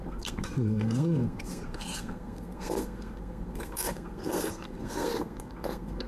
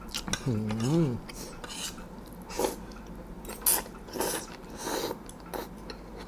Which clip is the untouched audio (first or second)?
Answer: second